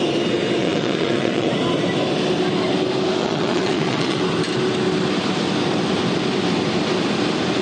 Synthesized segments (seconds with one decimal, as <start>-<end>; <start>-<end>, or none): 0.6-1.5; 3.2-4.2